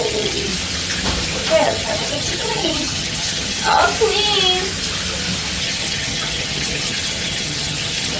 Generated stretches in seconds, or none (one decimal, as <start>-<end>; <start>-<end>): 0.0-0.5; 1.6-3.8; 5.6-8.2